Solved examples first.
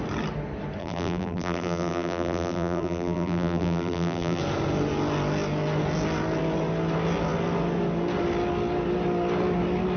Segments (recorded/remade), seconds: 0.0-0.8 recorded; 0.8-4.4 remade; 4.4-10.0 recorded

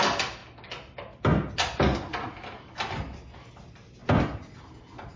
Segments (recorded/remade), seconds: 0.0-0.4 remade; 0.4-3.5 recorded; 3.5-5.2 remade

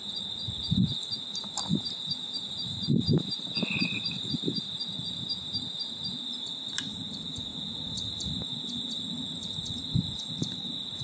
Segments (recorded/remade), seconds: 0.0-1.7 recorded; 1.7-6.1 remade; 6.1-11.0 recorded

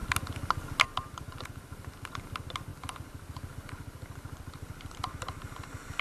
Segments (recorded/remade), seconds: 0.0-2.7 recorded; 2.7-6.0 remade

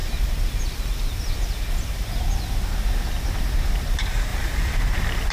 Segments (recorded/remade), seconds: 0.0-0.6 remade; 0.6-4.3 recorded; 4.3-5.3 remade

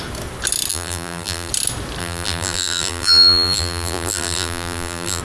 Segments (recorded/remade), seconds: 0.0-0.7 recorded; 0.7-1.5 remade; 1.5-2.0 recorded; 2.0-5.2 remade